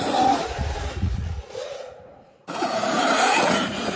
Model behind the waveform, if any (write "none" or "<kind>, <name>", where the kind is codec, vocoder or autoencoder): vocoder, Vocos